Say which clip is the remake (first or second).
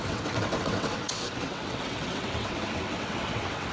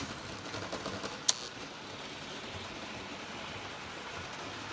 first